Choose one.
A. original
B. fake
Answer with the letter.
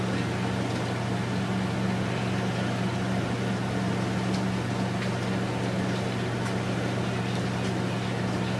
A